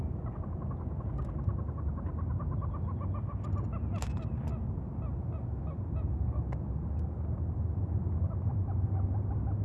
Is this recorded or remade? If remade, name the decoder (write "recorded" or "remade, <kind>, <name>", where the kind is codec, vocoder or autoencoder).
recorded